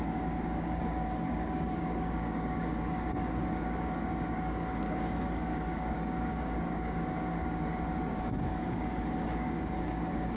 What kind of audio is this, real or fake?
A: fake